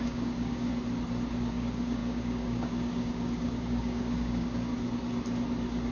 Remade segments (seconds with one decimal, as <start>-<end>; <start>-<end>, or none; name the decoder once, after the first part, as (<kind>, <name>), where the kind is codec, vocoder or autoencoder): 0.0-0.7 (codec, DAC); 1.5-4.7